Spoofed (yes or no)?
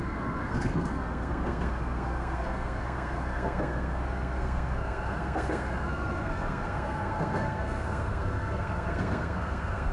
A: yes